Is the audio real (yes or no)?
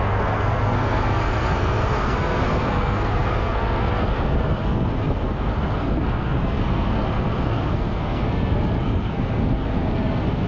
no